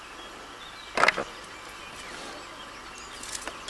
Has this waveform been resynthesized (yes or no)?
no